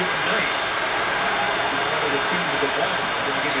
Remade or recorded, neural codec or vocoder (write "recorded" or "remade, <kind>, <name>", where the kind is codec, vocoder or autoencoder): recorded